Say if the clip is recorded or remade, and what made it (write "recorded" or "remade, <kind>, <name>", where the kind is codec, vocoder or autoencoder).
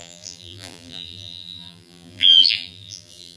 remade, vocoder, BigVGAN v2